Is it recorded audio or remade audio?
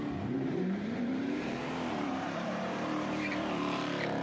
remade